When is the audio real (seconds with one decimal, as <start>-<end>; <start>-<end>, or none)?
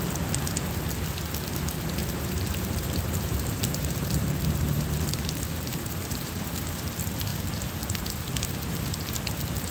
0.0-2.0; 6.8-9.7